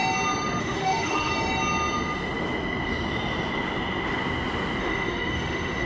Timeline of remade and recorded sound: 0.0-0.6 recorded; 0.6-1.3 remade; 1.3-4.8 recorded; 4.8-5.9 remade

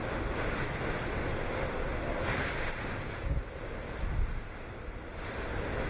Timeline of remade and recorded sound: 0.0-5.9 recorded

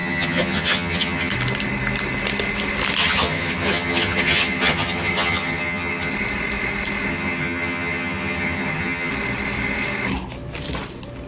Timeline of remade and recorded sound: 0.0-1.3 remade; 1.3-3.0 recorded; 3.0-6.1 remade; 6.1-7.1 recorded; 7.1-9.1 remade; 9.1-11.3 recorded